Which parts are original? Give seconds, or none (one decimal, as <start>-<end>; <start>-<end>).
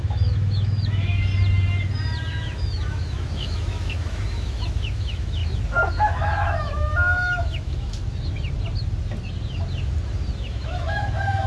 1.3-2.3; 5.4-6.0; 8.0-10.4